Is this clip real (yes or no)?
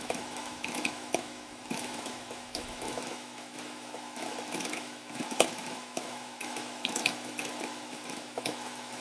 no